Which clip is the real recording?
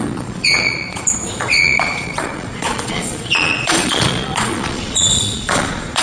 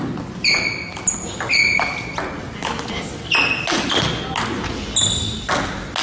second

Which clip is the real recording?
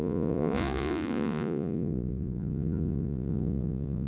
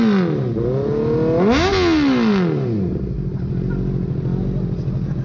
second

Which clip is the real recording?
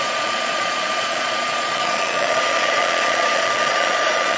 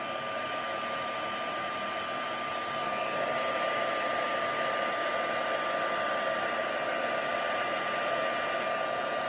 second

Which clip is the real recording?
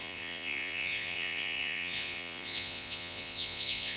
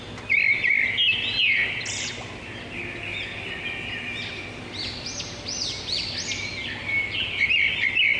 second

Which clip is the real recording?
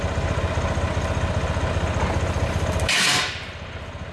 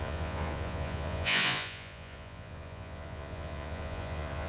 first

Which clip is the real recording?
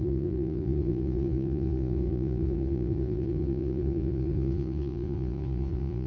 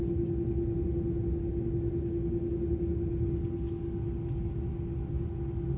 second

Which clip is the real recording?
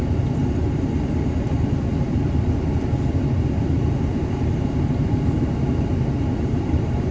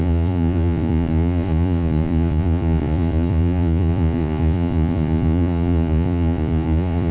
first